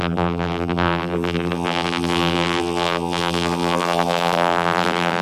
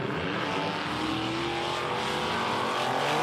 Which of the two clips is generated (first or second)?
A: first